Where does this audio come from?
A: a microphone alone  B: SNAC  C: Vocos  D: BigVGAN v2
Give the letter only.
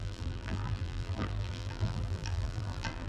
D